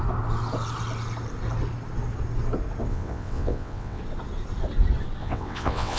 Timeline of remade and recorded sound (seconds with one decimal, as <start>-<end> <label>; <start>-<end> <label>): 0.0-2.9 recorded; 2.9-4.0 remade; 4.0-5.2 recorded; 5.2-6.0 remade